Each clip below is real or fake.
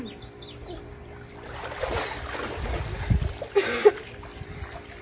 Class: real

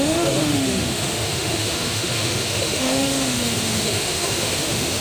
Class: fake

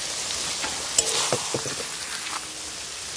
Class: real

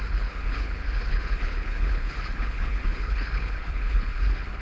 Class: fake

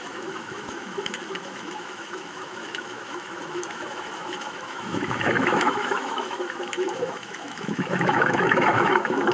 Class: fake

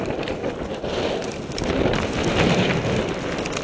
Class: real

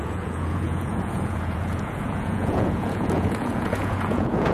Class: fake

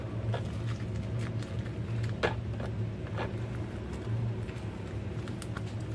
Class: real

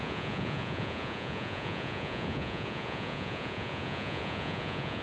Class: fake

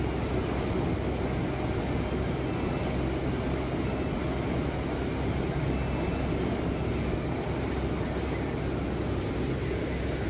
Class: real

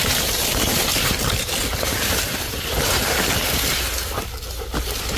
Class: real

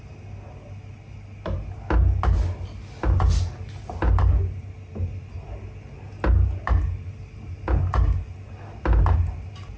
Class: real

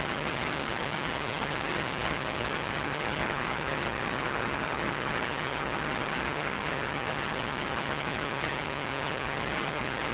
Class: fake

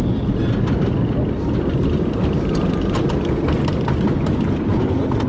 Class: real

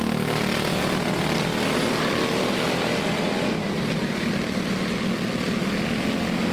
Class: real